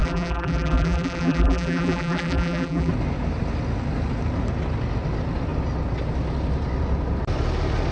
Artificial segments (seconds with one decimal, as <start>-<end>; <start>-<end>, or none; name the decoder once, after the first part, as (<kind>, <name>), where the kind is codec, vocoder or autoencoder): 0.0-2.9 (vocoder, BigVGAN v2)